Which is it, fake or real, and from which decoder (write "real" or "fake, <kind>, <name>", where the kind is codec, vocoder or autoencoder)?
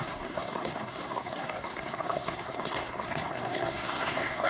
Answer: fake, codec, SNAC